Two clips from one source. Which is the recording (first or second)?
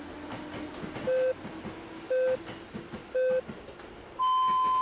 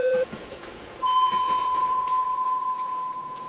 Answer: first